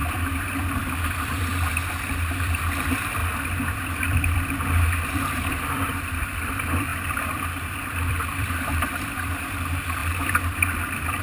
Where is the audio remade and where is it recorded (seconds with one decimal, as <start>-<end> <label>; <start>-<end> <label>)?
0.0-11.2 remade